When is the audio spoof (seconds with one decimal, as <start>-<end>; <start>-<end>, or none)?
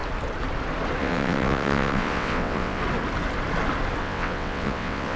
1.0-2.8; 4.0-5.2